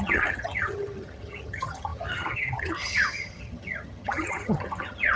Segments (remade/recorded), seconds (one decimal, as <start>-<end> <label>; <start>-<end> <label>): 0.0-5.2 remade